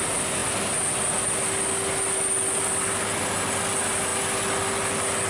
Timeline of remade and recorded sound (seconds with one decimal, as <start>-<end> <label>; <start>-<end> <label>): 0.0-5.3 recorded